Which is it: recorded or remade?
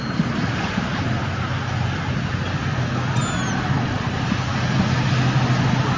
recorded